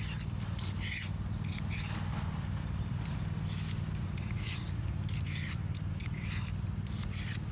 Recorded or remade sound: recorded